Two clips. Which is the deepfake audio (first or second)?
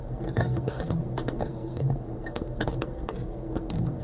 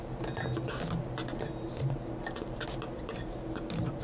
first